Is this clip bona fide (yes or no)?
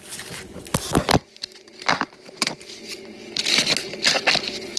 yes